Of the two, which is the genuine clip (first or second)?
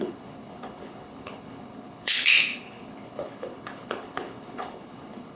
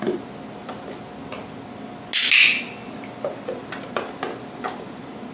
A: second